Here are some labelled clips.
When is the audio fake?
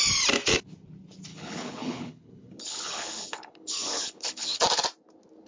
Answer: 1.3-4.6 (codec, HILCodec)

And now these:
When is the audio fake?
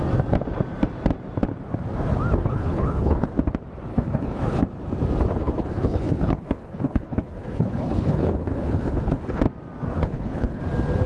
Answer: 2.4-3.3 (codec, HILCodec); 3.9-4.6; 5.4-9.4; 9.9-10.6